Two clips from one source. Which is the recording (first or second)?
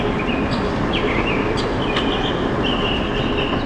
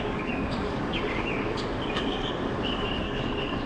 first